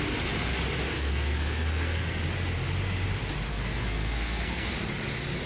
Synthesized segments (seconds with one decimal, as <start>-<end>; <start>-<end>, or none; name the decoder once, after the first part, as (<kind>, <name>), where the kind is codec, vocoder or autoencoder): 0.9-2.2 (codec, SNAC); 3.5-4.7

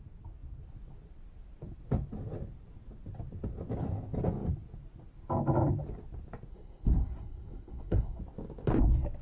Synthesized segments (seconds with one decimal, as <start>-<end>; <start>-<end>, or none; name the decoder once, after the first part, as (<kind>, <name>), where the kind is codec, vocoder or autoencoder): 6.5-8.2 (codec, SNAC)

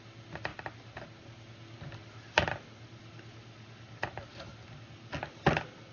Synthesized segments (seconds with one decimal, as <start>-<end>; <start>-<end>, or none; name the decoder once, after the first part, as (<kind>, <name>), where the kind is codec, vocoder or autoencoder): none

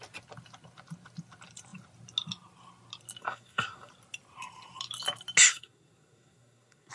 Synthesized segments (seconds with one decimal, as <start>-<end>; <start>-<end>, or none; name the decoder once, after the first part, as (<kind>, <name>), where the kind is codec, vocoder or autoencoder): 3.2-3.9 (codec, SNAC); 5.5-6.9

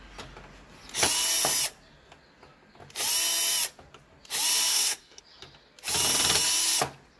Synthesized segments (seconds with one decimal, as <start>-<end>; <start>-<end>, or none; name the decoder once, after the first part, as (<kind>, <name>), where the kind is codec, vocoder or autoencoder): 4.7-5.2 (codec, SNAC)

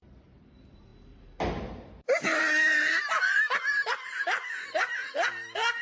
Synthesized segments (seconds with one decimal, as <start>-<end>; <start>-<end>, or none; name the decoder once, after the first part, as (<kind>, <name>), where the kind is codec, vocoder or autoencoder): none